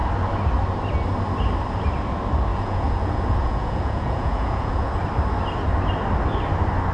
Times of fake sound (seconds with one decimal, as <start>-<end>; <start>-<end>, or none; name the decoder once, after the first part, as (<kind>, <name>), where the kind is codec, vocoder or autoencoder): 2.5-5.0 (vocoder, Vocos)

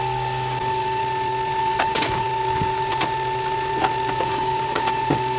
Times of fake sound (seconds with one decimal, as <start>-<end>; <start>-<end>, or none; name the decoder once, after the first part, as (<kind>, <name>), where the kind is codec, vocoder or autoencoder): 0.0-1.0 (codec, DAC); 1.6-2.3; 4.1-5.4